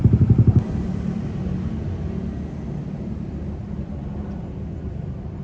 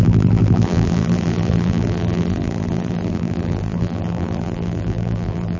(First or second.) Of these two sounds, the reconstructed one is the second